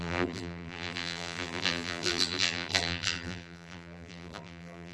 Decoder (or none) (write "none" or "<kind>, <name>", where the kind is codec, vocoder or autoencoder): vocoder, BigVGAN v2